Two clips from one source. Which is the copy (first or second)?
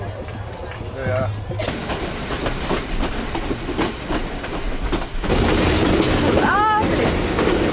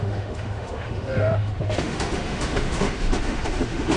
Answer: second